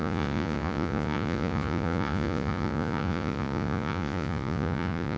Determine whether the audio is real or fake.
fake